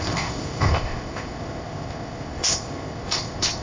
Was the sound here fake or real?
fake